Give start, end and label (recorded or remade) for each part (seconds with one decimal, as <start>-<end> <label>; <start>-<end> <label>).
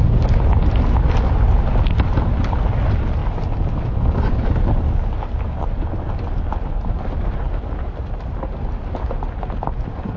0.0-10.2 recorded